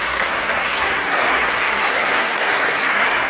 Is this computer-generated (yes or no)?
yes